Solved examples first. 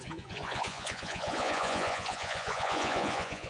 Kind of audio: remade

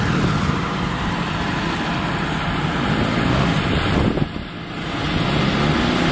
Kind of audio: recorded